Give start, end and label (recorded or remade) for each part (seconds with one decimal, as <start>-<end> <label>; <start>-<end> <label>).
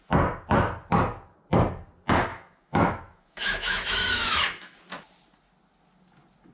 0.0-2.3 recorded; 2.3-4.8 remade; 4.8-6.5 recorded